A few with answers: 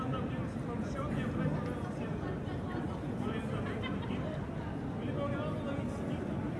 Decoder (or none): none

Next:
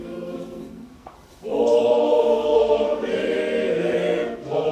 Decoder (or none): codec, SNAC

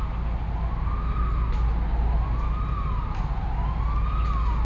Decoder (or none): none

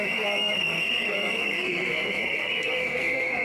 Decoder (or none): codec, SNAC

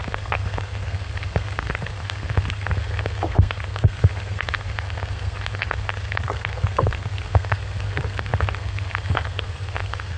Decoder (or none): codec, SNAC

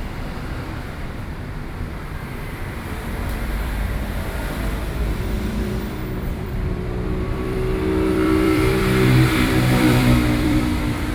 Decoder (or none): vocoder, BigVGAN v2